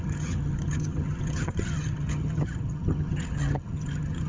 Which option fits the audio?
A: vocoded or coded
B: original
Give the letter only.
A